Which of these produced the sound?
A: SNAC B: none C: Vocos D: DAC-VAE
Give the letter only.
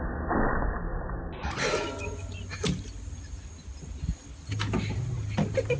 B